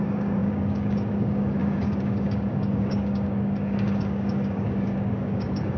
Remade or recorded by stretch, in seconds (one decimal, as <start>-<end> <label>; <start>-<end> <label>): 0.0-5.8 remade